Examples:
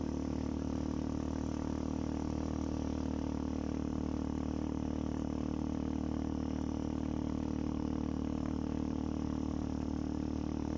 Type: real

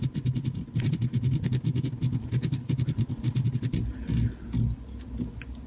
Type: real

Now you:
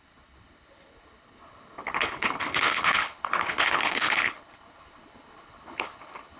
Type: fake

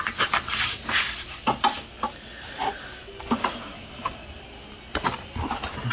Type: real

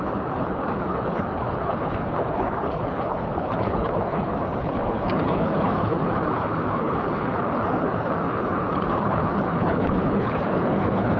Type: fake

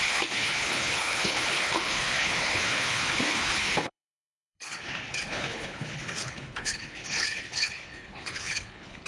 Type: fake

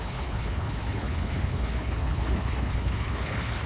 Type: fake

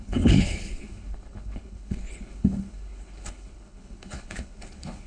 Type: fake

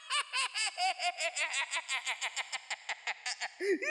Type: real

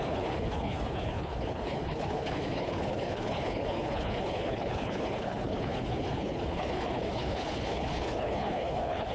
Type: fake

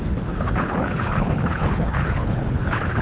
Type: fake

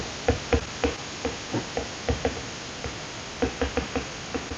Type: real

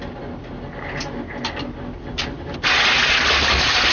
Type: real